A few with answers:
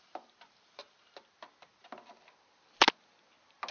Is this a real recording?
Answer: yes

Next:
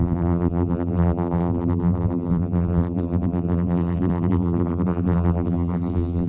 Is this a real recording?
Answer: no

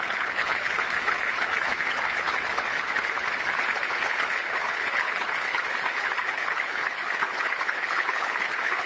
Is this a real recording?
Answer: no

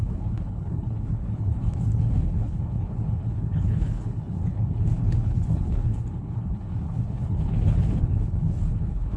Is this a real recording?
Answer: no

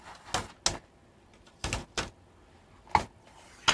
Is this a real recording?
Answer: yes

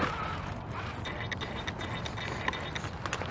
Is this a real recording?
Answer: yes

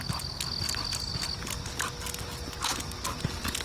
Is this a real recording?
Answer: yes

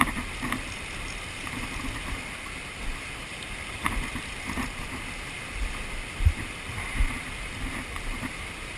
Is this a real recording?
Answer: yes